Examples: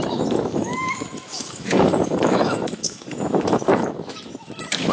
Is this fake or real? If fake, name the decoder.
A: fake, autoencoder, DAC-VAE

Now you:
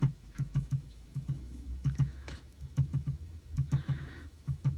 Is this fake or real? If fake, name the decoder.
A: fake, autoencoder, DAC-VAE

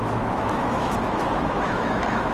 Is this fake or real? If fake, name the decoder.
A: fake, autoencoder, DAC-VAE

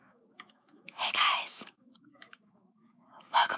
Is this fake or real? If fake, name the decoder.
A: fake, autoencoder, DAC-VAE